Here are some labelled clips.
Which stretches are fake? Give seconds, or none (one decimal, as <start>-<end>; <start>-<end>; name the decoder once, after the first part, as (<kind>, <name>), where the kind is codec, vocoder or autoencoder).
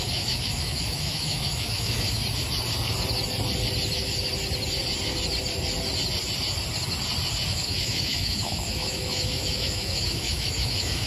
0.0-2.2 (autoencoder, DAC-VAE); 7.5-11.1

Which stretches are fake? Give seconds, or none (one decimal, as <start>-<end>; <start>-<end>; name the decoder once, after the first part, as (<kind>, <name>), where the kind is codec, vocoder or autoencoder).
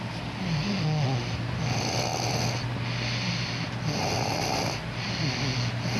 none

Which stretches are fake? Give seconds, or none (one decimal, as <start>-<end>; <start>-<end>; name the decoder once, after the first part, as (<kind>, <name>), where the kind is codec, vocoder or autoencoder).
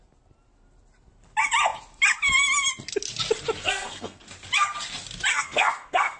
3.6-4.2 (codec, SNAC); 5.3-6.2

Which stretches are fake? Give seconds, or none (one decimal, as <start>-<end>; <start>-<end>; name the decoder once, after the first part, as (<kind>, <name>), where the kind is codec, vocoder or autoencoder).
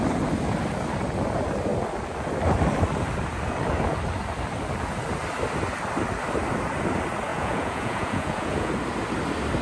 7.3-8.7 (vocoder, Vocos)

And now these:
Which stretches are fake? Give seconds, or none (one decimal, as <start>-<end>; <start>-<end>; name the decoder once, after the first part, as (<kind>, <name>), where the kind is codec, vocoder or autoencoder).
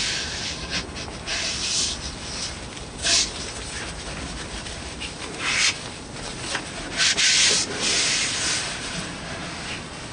none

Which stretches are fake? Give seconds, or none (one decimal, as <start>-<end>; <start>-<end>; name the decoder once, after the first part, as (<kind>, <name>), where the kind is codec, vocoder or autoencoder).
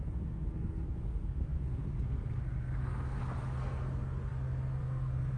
0.0-5.4 (codec, SNAC)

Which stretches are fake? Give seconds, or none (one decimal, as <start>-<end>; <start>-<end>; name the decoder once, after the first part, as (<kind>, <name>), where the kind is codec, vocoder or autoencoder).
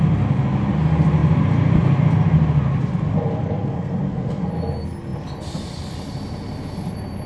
3.6-4.5 (codec, SNAC)